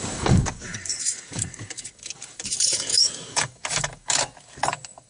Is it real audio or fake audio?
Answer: fake